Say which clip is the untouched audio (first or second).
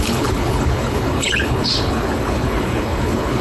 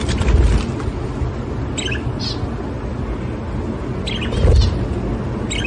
second